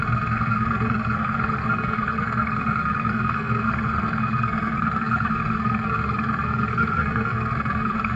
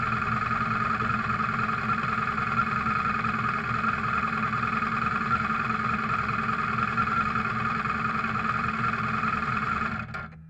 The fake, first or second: first